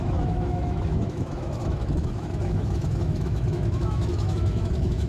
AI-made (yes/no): yes